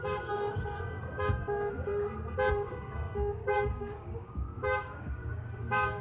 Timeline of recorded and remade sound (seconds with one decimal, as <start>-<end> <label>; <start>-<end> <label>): 0.0-1.9 remade; 1.9-2.5 recorded; 2.5-6.0 remade